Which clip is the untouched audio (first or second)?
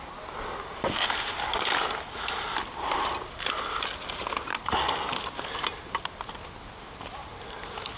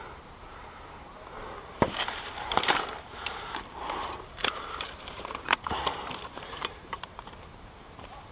first